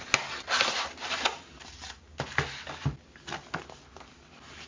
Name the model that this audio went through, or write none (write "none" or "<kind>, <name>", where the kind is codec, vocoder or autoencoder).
none